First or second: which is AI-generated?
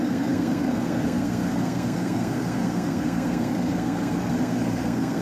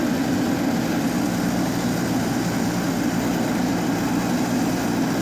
first